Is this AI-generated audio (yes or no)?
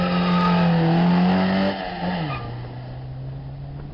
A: no